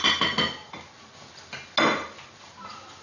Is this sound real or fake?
real